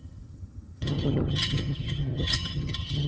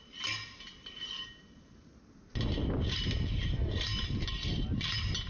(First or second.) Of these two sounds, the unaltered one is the second